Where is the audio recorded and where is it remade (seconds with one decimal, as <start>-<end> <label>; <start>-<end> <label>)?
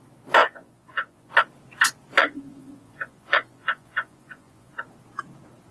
0.0-0.4 recorded; 0.4-1.3 remade; 1.3-2.2 recorded; 2.2-4.7 remade; 4.7-5.7 recorded